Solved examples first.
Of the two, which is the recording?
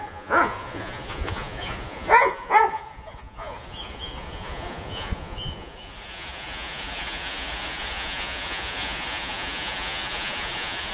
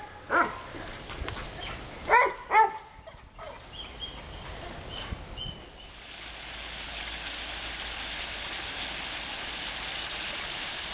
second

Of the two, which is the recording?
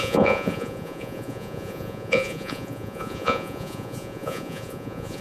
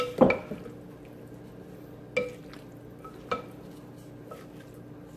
second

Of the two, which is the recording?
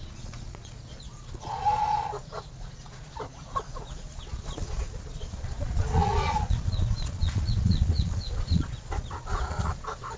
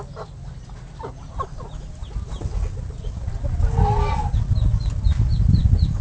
second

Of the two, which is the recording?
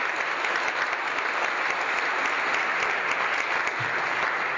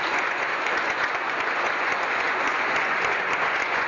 first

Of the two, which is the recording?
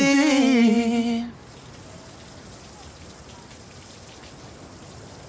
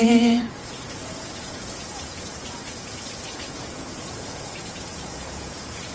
first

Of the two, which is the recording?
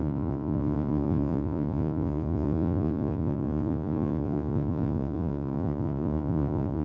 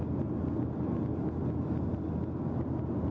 second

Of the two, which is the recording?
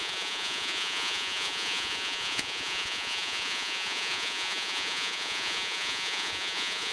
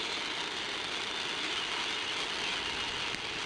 second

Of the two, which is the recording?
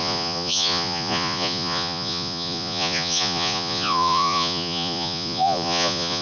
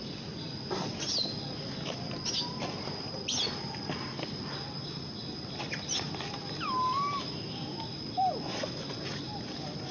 second